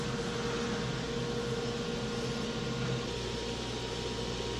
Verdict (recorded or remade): recorded